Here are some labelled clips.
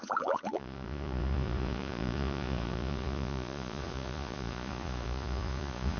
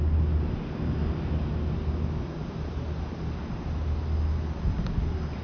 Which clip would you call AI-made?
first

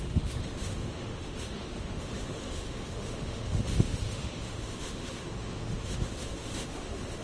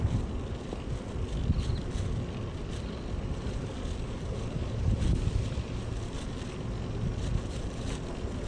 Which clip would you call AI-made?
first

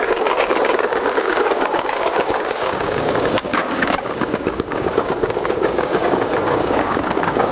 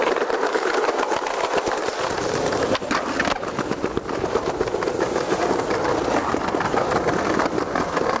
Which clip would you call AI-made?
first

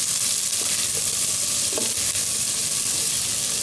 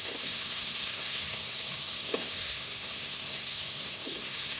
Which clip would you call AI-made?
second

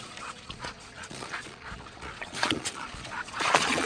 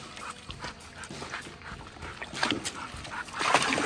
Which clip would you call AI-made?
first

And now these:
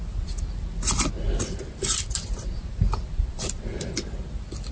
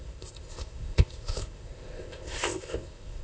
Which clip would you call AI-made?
second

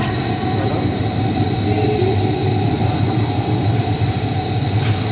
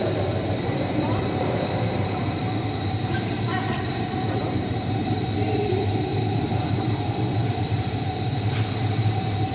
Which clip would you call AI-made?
second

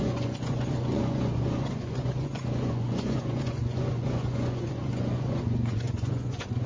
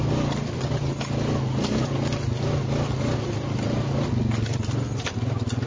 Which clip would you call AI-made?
first